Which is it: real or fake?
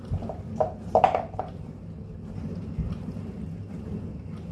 fake